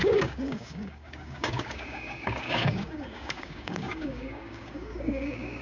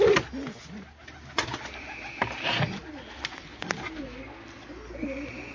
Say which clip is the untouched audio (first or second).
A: second